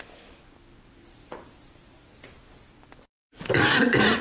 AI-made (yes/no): no